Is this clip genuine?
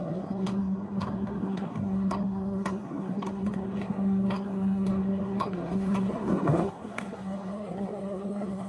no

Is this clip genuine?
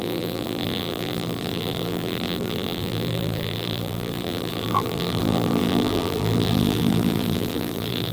no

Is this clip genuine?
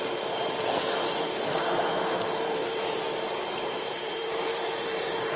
no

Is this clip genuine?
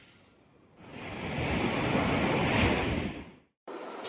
no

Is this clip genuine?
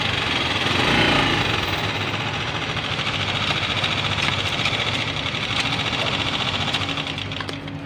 yes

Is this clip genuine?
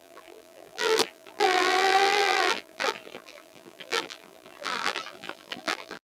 no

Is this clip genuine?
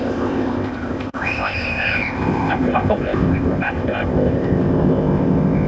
no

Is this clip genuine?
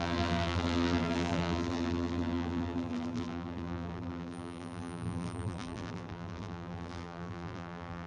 no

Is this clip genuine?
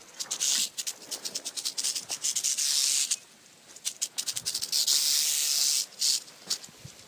yes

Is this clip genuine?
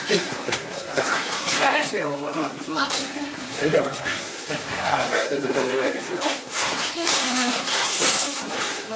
no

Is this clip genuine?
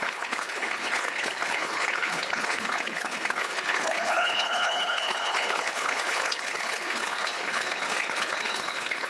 no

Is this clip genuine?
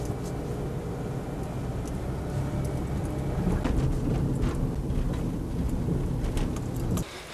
yes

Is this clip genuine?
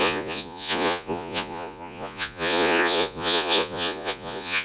no